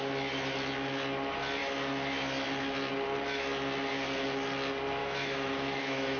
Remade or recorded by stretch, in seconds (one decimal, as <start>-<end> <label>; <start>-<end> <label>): 0.0-5.0 recorded; 5.0-6.2 remade